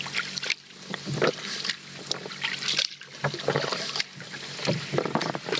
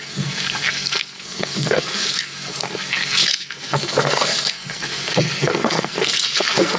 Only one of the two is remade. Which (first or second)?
second